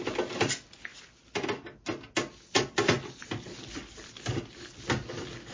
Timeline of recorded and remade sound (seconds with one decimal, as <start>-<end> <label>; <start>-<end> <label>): 0.0-5.5 recorded